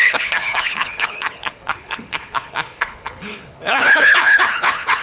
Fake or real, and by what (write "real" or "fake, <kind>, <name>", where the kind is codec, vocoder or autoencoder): fake, codec, HILCodec